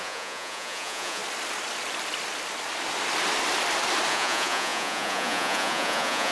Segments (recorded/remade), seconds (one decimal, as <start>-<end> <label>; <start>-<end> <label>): 0.0-1.2 remade; 1.2-4.1 recorded; 4.1-6.3 remade